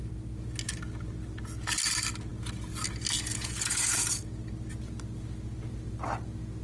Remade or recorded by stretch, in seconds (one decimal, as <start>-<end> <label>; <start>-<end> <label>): 0.0-3.3 recorded; 3.3-4.2 remade; 4.2-6.6 recorded

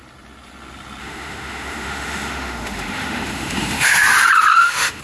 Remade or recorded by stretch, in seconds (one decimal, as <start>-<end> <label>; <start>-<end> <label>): 0.0-1.0 recorded; 1.0-4.0 remade; 4.0-4.5 recorded; 4.5-5.0 remade

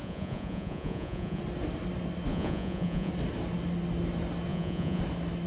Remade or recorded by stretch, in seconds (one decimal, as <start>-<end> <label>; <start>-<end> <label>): 0.0-1.4 remade; 1.4-2.3 recorded; 2.3-3.1 remade; 3.1-4.5 recorded; 4.5-5.0 remade; 5.0-5.5 recorded

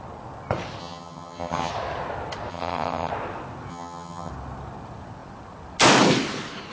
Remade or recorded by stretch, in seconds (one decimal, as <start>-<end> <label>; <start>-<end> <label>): 0.0-0.8 recorded; 0.8-1.7 remade; 1.7-2.5 recorded; 2.5-3.1 remade; 3.1-3.7 recorded; 3.7-4.3 remade; 4.3-6.7 recorded